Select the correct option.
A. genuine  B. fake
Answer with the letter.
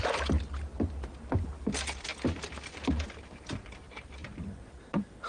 A